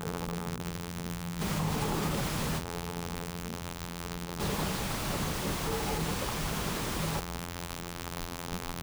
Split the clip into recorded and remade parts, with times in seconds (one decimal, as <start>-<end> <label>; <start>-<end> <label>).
0.0-1.4 remade; 1.4-2.6 recorded; 2.6-4.4 remade; 4.4-7.2 recorded; 7.2-8.8 remade